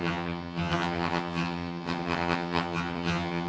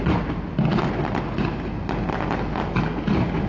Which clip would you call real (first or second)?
second